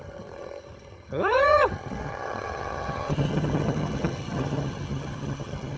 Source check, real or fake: fake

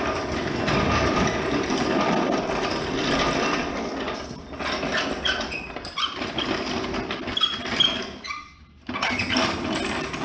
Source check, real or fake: real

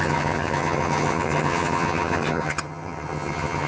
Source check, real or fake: fake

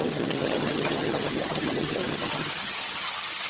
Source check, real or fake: fake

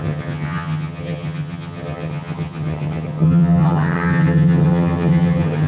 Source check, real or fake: fake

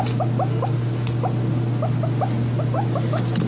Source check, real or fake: real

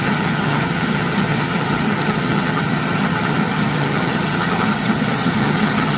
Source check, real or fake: fake